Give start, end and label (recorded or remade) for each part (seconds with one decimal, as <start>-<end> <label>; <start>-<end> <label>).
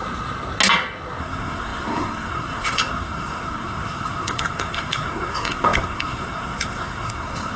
0.0-1.2 recorded; 1.2-7.6 remade